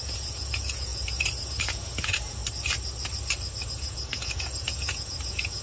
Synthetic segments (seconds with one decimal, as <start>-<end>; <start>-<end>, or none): 0.0-2.4; 3.7-5.6